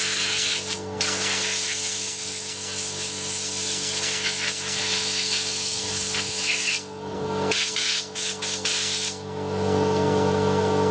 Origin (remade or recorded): remade